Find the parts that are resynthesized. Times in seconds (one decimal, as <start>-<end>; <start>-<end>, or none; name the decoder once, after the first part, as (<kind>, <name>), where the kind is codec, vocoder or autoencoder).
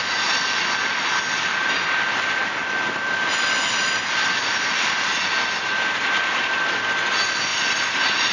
none